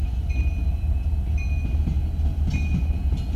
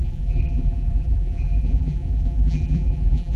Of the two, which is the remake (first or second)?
second